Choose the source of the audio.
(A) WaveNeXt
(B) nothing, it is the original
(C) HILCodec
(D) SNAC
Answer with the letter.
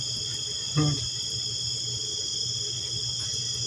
B